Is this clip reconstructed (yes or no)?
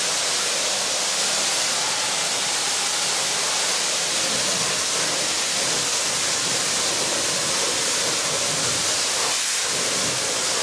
no